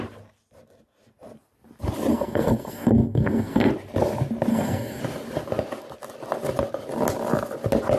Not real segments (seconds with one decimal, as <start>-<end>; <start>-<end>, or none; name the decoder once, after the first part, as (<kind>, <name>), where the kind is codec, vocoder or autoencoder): 2.1-3.7 (codec, SNAC); 4.5-5.0